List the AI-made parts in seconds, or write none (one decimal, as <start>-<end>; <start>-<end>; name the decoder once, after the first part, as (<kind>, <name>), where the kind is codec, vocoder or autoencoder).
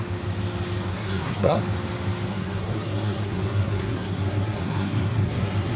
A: 0.9-1.6 (codec, SNAC); 2.3-5.8